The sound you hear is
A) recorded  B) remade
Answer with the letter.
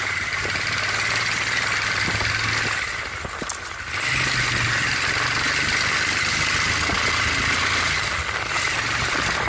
A